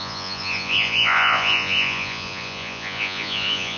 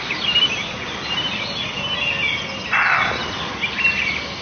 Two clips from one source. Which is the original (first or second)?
second